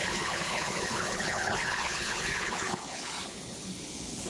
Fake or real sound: fake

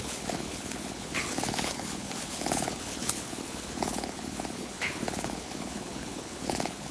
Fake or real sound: fake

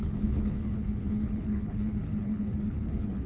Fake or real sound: fake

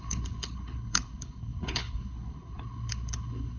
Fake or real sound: fake